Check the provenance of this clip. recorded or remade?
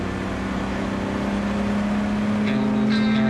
recorded